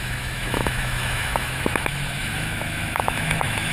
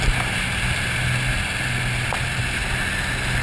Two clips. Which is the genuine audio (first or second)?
second